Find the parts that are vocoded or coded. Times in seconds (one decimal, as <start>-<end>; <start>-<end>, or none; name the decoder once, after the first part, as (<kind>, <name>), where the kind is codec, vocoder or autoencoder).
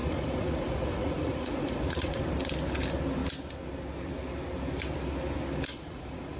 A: 0.0-2.2 (vocoder, Vocos); 5.7-6.4